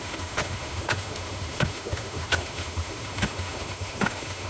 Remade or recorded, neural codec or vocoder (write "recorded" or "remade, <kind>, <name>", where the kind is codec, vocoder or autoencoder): remade, autoencoder, DAC-VAE